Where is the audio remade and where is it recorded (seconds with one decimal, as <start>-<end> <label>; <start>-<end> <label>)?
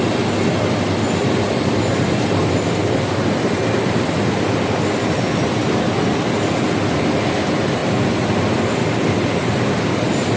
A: 0.0-10.4 recorded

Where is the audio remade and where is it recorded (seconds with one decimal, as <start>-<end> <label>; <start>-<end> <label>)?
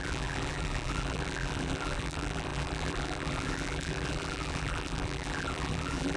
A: 0.0-6.2 remade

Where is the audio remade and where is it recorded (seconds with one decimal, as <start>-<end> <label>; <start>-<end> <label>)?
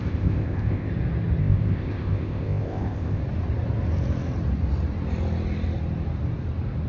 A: 0.0-0.9 remade; 0.9-1.4 recorded; 1.4-3.2 remade; 3.2-6.9 recorded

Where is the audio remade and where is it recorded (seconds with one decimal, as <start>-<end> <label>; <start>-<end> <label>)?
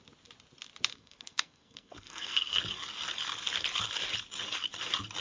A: 0.0-0.9 recorded; 0.9-2.6 remade; 2.6-5.2 recorded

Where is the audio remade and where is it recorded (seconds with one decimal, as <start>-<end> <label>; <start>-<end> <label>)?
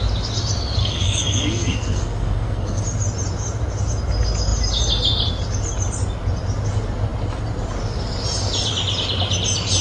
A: 0.0-0.8 recorded; 0.8-2.8 remade; 2.8-9.8 recorded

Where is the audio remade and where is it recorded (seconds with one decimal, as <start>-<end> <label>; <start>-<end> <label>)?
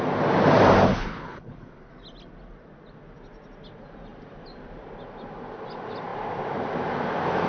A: 0.0-0.9 recorded; 0.9-1.9 remade; 1.9-7.5 recorded